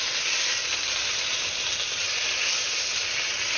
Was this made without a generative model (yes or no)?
yes